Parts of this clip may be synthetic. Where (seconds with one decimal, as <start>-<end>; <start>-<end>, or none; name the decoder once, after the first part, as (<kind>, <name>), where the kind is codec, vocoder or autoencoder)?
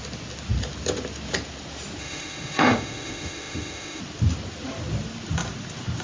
2.0-4.0 (autoencoder, DAC-VAE)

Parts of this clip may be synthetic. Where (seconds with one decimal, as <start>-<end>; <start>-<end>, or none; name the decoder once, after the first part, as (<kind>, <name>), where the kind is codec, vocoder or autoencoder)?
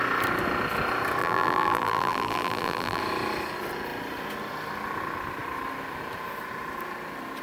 1.2-3.0 (vocoder, BigVGAN v2)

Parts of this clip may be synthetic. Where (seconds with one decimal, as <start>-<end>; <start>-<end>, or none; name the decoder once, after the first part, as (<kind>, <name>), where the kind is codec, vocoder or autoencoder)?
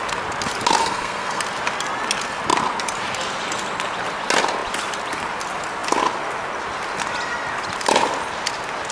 0.8-1.4 (codec, SNAC)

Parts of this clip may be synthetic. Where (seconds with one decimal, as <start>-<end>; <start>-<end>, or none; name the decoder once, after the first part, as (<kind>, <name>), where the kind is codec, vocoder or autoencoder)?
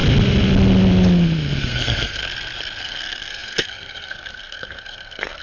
1.6-2.2 (codec, SNAC); 2.8-5.4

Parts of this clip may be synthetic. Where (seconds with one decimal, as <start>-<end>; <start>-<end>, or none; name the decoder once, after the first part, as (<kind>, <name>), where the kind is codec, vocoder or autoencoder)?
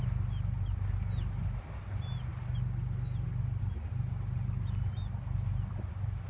none